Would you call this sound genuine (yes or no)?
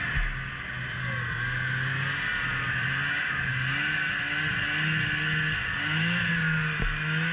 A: yes